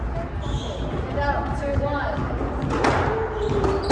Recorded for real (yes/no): yes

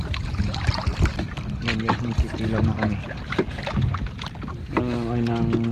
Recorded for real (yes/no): yes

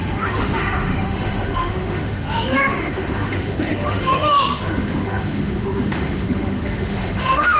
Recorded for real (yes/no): no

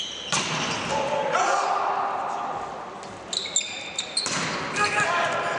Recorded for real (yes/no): yes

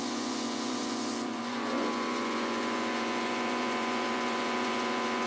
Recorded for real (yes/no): no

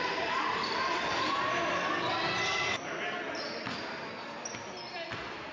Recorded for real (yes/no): yes